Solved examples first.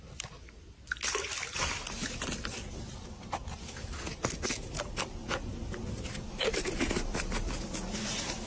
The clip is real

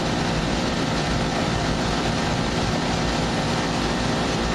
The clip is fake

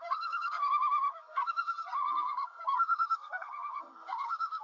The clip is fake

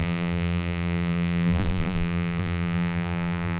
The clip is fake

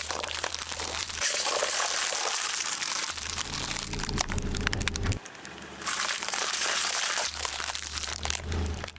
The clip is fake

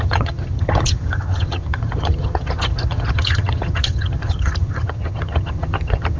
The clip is fake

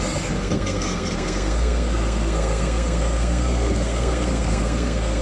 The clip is fake